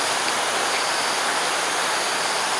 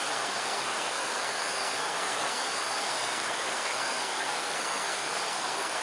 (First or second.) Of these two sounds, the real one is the first